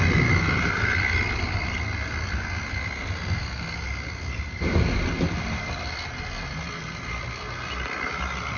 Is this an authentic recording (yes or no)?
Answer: yes